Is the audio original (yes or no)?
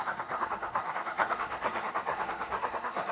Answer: no